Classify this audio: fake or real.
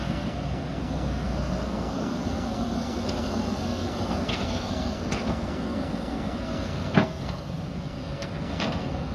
fake